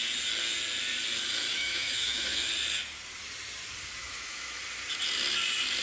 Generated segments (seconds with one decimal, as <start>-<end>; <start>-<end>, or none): 1.5-2.5; 4.0-4.6